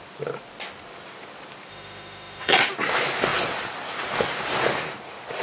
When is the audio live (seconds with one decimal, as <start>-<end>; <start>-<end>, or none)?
0.0-1.7; 2.6-5.4